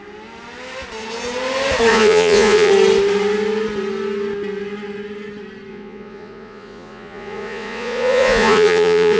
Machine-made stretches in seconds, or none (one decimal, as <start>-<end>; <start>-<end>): 1.9-2.7; 5.7-9.2